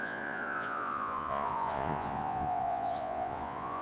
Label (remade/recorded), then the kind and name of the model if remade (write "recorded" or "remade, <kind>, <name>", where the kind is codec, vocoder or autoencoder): remade, vocoder, Vocos